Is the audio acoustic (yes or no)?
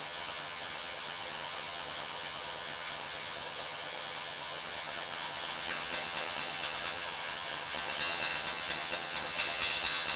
no